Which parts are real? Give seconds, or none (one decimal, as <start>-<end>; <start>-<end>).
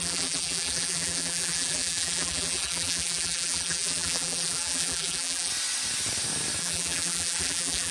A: 5.5-6.6